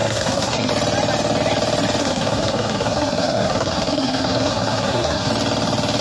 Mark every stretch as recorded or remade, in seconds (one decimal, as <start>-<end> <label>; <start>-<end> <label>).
0.0-0.7 remade; 0.7-2.0 recorded; 2.0-5.3 remade; 5.3-6.0 recorded